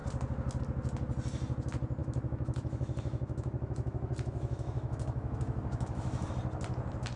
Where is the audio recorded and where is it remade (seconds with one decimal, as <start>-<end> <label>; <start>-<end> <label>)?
0.0-2.0 recorded; 2.0-6.3 remade; 6.3-7.2 recorded